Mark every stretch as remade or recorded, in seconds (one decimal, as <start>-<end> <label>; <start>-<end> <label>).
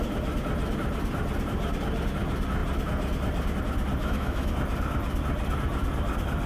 0.0-4.0 recorded; 4.0-4.5 remade; 4.5-6.5 recorded